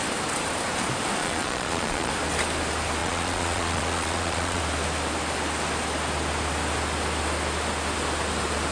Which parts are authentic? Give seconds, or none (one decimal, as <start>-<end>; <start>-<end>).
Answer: 0.0-1.2; 2.1-3.0; 4.6-8.7